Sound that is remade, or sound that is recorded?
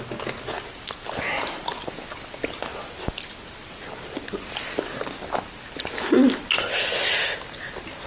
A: recorded